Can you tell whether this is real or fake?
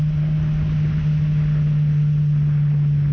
real